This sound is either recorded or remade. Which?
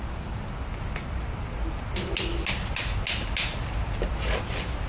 recorded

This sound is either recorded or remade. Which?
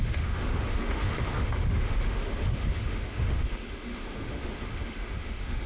remade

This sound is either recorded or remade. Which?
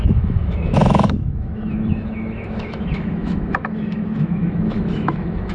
remade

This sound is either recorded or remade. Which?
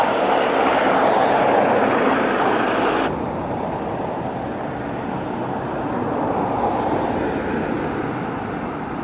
recorded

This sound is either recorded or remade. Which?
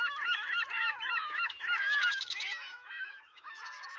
remade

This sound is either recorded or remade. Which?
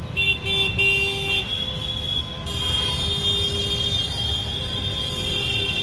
recorded